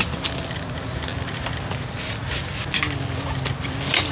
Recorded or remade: recorded